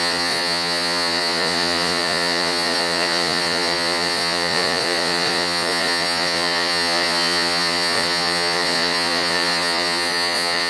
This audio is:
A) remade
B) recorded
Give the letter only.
A